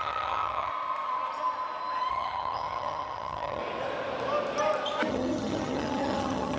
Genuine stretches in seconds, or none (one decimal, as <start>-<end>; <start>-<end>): 0.7-2.1; 3.6-5.1